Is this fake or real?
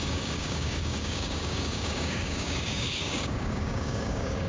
fake